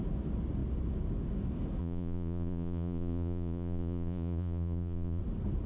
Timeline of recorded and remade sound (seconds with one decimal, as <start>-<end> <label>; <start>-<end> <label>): 0.0-1.8 recorded; 1.8-5.2 remade; 5.2-5.7 recorded